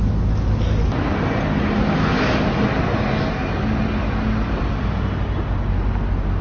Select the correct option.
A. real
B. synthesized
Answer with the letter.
A